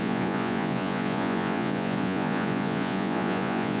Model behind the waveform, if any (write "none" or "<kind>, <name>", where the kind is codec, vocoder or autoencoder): vocoder, Vocos